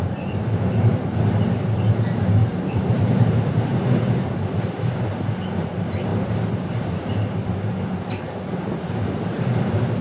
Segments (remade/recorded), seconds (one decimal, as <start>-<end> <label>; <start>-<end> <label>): 0.0-2.4 recorded; 2.4-2.9 remade; 2.9-6.1 recorded; 6.1-7.1 remade; 7.1-10.0 recorded